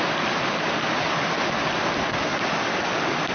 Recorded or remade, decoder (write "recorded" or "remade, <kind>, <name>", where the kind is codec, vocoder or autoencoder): recorded